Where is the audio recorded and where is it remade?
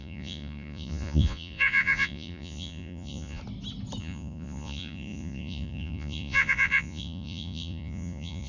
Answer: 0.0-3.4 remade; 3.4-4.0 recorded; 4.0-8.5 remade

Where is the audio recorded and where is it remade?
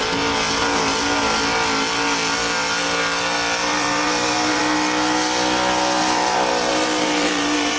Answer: 0.0-3.7 recorded; 3.7-4.6 remade; 4.6-6.0 recorded; 6.0-7.8 remade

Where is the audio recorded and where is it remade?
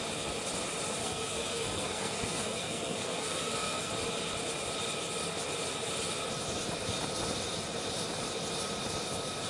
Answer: 0.0-1.0 recorded; 1.0-3.9 remade; 3.9-9.5 recorded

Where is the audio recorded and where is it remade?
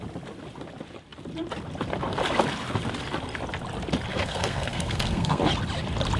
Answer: 0.0-4.1 recorded; 4.1-5.4 remade; 5.4-6.2 recorded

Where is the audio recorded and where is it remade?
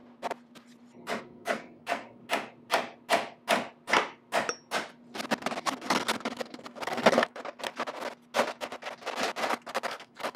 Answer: 0.0-1.2 recorded; 1.2-2.2 remade; 2.2-5.6 recorded; 5.6-7.4 remade; 7.4-9.9 recorded; 9.9-10.4 remade